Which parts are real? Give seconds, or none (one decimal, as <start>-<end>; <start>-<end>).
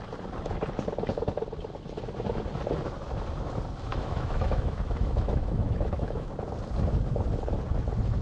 0.0-3.9; 6.3-8.2